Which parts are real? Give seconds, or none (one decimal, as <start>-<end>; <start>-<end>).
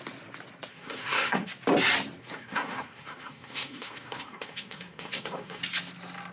0.0-0.7; 1.5-2.2; 5.6-6.3